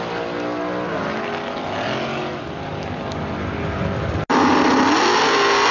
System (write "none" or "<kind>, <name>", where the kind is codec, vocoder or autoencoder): none